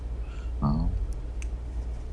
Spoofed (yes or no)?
no